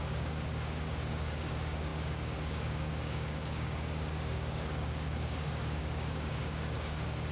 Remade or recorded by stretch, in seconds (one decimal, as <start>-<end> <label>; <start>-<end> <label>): 0.0-7.3 remade